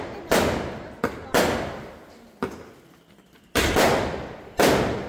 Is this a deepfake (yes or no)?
no